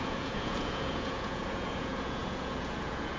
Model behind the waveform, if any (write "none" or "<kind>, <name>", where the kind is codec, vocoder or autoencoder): vocoder, Vocos